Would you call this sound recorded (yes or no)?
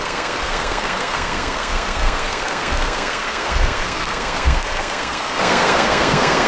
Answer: no